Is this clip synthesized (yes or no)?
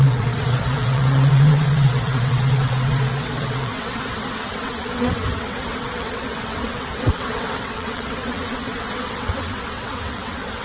yes